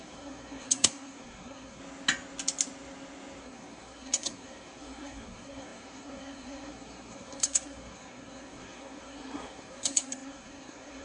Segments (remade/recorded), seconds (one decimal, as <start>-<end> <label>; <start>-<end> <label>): 0.0-1.8 remade; 1.8-3.4 recorded; 3.4-11.0 remade